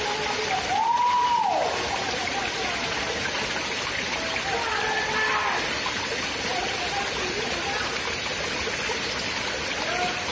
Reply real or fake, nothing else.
real